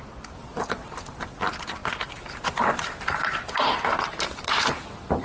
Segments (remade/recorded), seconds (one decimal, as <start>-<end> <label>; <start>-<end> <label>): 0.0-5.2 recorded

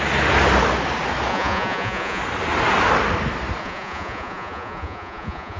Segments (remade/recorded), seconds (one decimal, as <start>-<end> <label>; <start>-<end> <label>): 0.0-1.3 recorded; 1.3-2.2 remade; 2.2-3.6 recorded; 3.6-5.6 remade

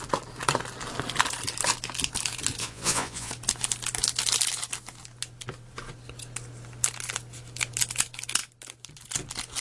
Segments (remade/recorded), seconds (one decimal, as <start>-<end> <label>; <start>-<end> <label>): 0.0-2.6 recorded; 2.6-3.3 remade; 3.3-9.6 recorded

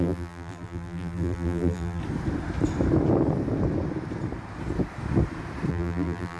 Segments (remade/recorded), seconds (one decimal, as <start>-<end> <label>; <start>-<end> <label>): 0.0-2.0 remade; 2.0-5.7 recorded; 5.7-6.4 remade